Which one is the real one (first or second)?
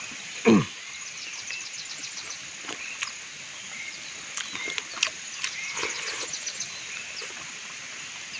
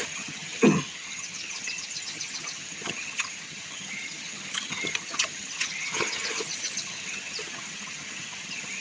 first